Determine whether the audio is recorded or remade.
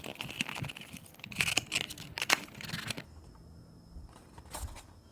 recorded